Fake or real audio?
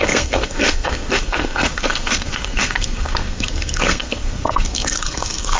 fake